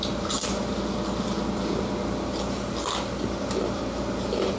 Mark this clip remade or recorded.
recorded